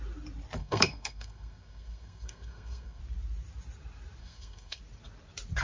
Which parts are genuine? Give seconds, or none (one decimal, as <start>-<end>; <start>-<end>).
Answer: 0.0-0.6; 3.0-4.2; 4.8-5.6

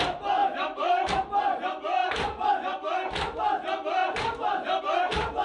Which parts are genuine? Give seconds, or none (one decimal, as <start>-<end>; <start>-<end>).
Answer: 0.0-0.4; 0.9-2.0; 2.5-4.0; 4.8-5.4